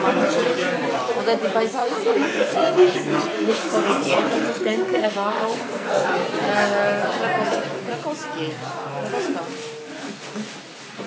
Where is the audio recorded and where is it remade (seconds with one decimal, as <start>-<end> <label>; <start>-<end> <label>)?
0.0-1.8 recorded; 1.8-6.1 remade; 6.1-11.1 recorded

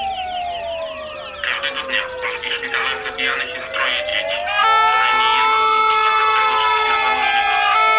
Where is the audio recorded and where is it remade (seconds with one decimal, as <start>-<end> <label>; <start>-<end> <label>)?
0.0-8.0 recorded

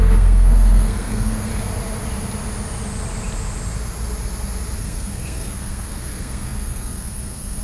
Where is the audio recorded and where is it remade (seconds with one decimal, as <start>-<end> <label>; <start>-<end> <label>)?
0.0-1.5 remade; 1.5-4.8 recorded; 4.8-7.6 remade

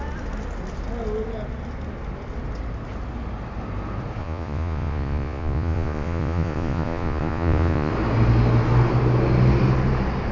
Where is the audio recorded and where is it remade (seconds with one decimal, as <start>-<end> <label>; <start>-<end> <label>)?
0.0-4.2 recorded; 4.2-7.9 remade; 7.9-10.3 recorded

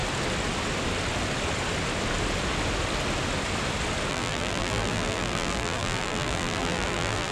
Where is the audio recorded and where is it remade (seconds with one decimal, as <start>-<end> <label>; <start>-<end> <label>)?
0.0-4.1 recorded; 4.1-7.3 remade

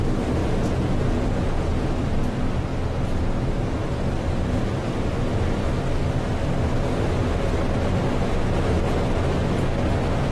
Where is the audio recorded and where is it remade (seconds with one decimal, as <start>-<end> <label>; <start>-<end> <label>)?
0.0-0.4 recorded; 0.4-1.9 remade; 1.9-10.3 recorded

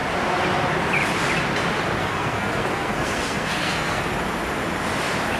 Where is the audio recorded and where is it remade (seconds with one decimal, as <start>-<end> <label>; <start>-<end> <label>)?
0.0-2.0 recorded; 2.0-4.0 remade; 4.0-5.4 recorded

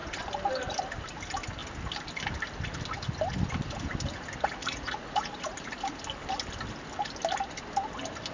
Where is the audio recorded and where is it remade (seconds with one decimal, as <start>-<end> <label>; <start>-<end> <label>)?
0.0-4.6 recorded; 4.6-5.5 remade; 5.5-8.3 recorded